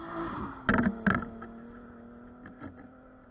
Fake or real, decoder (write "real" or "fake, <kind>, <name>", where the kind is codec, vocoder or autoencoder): real